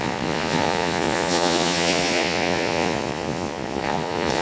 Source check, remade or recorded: remade